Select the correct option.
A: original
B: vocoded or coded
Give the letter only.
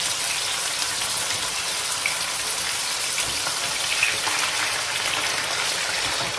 A